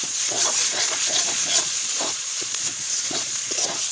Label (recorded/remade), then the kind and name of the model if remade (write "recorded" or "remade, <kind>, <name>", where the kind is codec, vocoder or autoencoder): remade, vocoder, Vocos